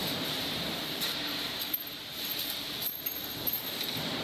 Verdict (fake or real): fake